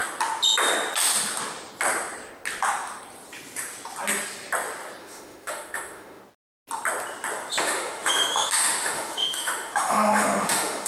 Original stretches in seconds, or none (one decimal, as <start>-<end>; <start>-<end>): 0.0-5.0; 6.2-7.6